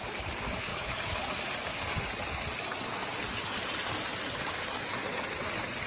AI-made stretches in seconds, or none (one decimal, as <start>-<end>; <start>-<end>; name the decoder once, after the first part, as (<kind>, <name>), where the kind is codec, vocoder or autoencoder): none